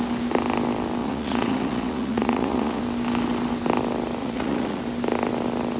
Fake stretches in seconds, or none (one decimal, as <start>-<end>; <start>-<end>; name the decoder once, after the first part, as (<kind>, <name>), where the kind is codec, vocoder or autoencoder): 1.0-2.8 (vocoder, Vocos); 4.2-4.8